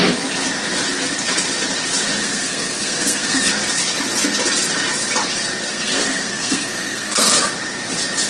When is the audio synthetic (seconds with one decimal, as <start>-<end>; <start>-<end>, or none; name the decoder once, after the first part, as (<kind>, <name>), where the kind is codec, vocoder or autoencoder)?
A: 2.2-3.5 (codec, SNAC); 5.7-7.4